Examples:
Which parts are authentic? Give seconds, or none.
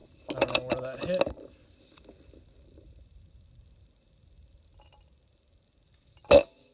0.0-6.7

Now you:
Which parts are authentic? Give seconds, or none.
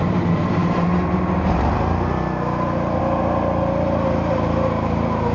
0.0-5.3